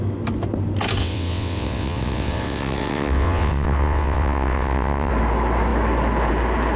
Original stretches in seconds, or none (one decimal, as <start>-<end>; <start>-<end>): 0.0-1.0; 5.1-6.8